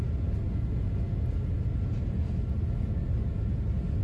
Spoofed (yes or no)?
no